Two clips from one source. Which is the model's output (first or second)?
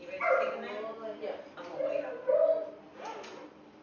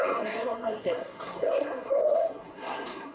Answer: second